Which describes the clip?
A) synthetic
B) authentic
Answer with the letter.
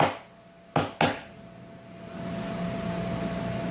B